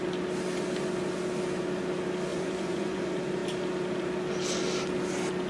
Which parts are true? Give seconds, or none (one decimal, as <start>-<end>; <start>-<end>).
0.0-2.3; 3.0-5.5